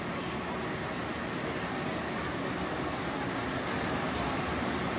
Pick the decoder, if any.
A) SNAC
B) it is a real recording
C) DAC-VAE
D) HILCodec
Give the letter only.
B